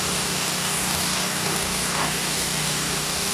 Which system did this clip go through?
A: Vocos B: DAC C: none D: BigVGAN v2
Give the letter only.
B